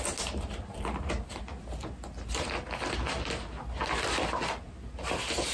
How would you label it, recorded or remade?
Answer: recorded